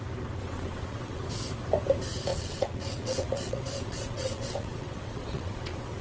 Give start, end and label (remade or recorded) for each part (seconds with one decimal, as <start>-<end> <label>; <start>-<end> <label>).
0.0-0.4 recorded; 0.4-1.3 remade; 1.3-2.3 recorded; 2.3-6.0 remade

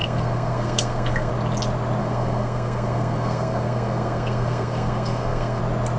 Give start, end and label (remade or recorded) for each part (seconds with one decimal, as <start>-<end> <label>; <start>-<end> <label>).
0.0-1.3 remade; 1.3-2.0 recorded; 2.0-5.6 remade; 5.6-6.0 recorded

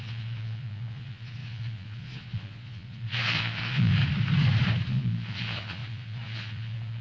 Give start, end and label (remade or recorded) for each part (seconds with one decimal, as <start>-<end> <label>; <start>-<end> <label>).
0.0-4.0 remade; 4.0-4.9 recorded; 4.9-7.0 remade

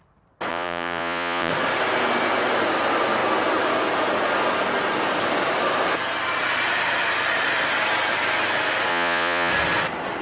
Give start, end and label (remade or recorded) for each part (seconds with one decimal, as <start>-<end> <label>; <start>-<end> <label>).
0.0-0.5 recorded; 0.5-1.5 remade; 1.5-8.9 recorded; 8.9-9.5 remade; 9.5-10.2 recorded

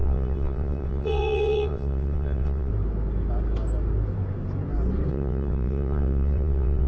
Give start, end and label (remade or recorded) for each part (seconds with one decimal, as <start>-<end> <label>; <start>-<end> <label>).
0.0-2.7 remade; 2.7-5.1 recorded; 5.1-6.9 remade

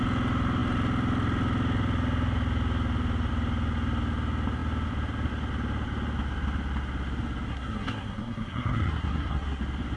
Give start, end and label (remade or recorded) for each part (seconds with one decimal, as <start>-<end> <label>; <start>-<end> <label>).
0.0-7.5 recorded; 7.5-9.6 remade; 9.6-10.0 recorded